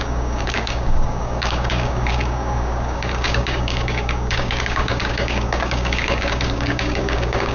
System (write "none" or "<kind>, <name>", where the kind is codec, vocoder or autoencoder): codec, DAC